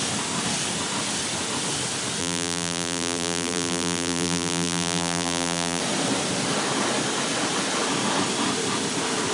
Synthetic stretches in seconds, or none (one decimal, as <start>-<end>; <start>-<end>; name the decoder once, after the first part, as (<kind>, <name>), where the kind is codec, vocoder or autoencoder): 2.2-5.8 (vocoder, BigVGAN v2)